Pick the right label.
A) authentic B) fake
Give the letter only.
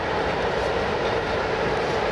B